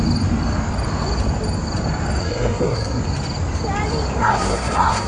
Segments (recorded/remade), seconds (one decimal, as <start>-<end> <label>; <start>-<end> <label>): 0.0-2.2 recorded; 2.2-3.0 remade; 3.0-4.2 recorded; 4.2-5.1 remade